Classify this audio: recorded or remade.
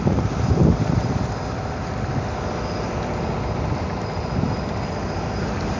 recorded